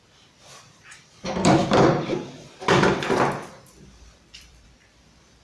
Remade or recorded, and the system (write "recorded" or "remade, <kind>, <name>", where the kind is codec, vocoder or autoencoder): remade, vocoder, BigVGAN v2